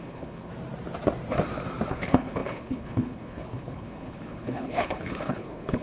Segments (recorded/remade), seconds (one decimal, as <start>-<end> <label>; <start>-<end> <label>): 0.0-0.5 remade; 0.5-1.9 recorded; 1.9-5.8 remade